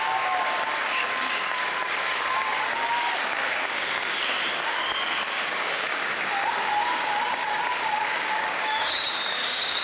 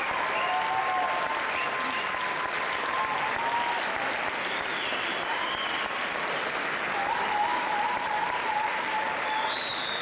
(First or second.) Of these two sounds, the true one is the second